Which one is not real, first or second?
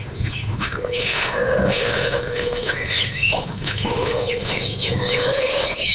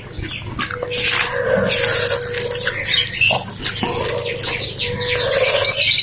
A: first